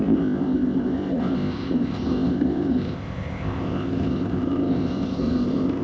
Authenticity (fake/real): fake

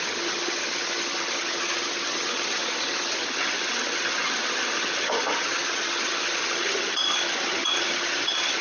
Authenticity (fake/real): fake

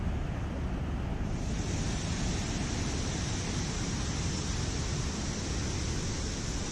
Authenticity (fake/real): real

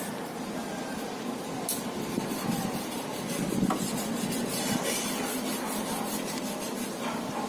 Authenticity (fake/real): real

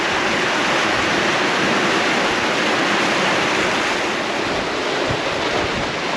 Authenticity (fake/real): real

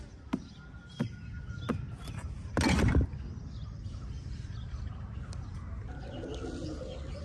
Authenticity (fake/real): real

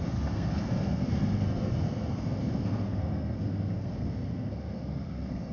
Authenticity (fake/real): fake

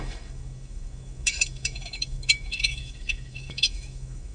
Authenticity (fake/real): fake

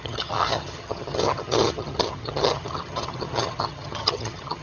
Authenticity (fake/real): fake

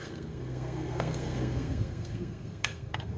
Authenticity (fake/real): fake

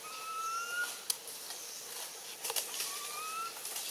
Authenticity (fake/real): real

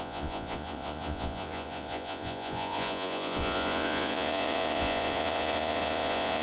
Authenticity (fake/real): fake